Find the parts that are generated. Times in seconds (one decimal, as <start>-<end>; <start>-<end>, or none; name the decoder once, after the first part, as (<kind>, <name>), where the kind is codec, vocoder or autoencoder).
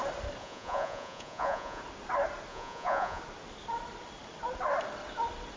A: 0.4-1.8 (vocoder, Vocos); 2.5-3.2